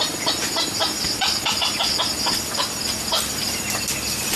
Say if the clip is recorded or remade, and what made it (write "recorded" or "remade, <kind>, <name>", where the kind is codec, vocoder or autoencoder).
recorded